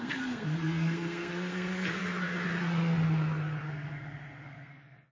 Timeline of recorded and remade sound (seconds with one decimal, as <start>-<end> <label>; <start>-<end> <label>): 0.0-2.0 remade; 2.0-3.7 recorded; 3.7-5.1 remade